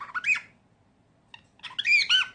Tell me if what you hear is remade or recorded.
recorded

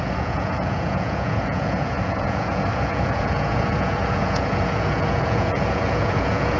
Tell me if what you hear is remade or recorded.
remade